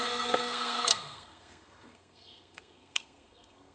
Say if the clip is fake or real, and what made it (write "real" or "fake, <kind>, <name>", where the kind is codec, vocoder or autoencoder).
fake, codec, SNAC